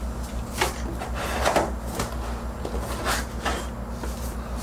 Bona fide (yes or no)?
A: yes